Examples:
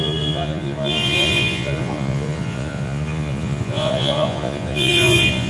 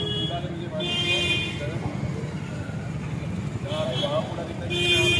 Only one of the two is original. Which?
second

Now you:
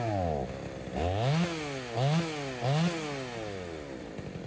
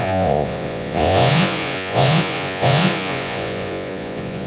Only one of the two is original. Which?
first